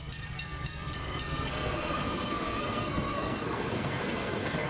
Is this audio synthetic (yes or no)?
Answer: yes